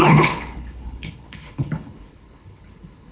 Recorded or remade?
remade